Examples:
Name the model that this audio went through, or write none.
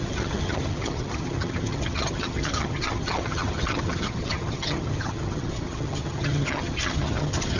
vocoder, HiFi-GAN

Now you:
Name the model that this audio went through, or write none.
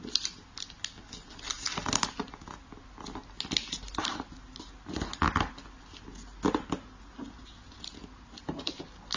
none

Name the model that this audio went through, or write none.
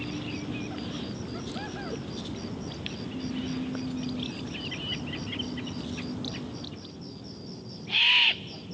none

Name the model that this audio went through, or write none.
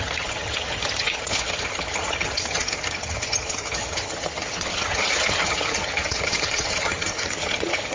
vocoder, HiFi-GAN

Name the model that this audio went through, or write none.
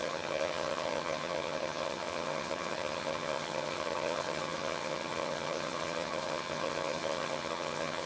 vocoder, HiFi-GAN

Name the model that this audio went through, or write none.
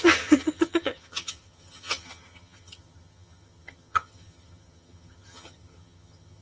vocoder, HiFi-GAN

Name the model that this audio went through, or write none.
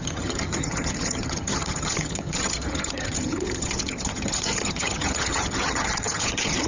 vocoder, HiFi-GAN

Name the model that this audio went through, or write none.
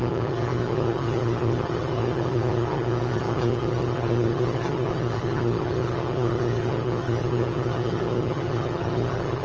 vocoder, HiFi-GAN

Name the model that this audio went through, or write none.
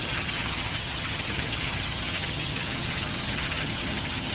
vocoder, HiFi-GAN